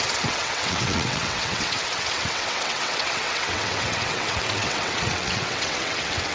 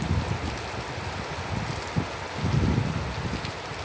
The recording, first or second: second